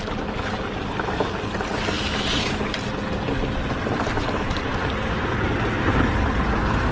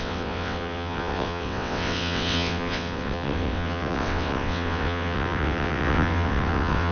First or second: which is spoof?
second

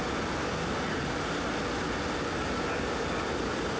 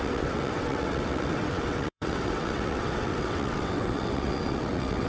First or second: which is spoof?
second